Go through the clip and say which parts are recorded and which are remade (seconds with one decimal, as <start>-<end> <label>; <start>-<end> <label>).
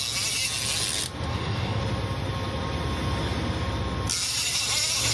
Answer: 0.0-1.3 recorded; 1.3-1.8 remade; 1.8-5.1 recorded